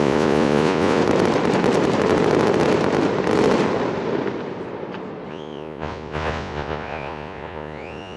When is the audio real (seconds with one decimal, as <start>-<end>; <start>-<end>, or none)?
1.0-5.3